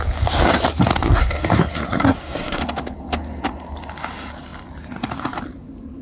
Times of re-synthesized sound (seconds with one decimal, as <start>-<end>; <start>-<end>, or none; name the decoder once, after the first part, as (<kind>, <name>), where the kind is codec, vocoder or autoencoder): 1.2-2.6 (codec, SNAC)